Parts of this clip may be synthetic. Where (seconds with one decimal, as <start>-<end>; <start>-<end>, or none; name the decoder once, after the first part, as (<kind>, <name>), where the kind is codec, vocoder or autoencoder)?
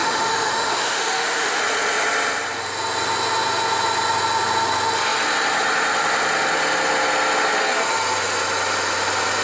0.0-1.6 (autoencoder, DAC-VAE)